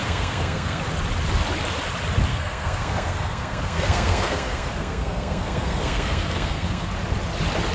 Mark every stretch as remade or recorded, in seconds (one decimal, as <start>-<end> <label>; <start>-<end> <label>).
0.0-0.8 remade; 0.8-2.3 recorded; 2.3-6.9 remade; 6.9-7.7 recorded